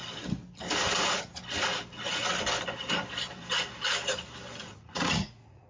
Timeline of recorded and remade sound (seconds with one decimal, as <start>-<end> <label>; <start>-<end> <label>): 0.0-4.6 recorded; 4.6-5.7 remade